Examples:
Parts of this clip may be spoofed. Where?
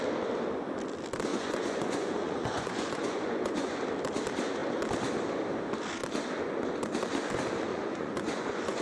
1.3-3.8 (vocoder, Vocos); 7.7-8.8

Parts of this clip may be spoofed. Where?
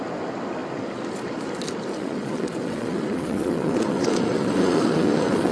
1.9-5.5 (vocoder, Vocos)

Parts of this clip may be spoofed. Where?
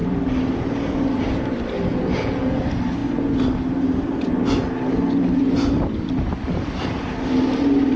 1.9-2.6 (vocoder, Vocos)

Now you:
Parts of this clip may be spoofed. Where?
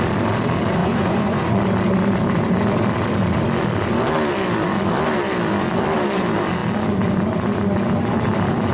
0.8-1.6 (vocoder, Vocos)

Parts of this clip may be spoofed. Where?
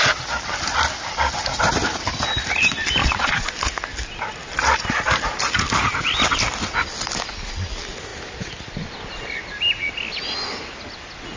3.0-3.5 (vocoder, Vocos)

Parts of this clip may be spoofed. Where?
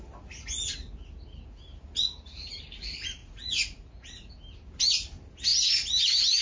3.2-4.3 (vocoder, Vocos)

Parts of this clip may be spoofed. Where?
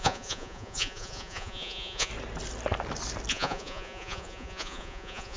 0.0-2.1 (vocoder, Vocos); 3.3-5.4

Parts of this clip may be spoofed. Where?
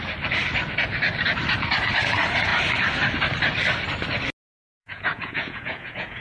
4.8-6.2 (vocoder, Vocos)